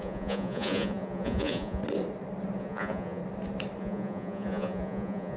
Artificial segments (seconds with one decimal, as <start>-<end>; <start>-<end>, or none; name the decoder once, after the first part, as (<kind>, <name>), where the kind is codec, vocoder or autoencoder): 0.0-1.8 (vocoder, Vocos); 2.6-3.2; 3.8-5.4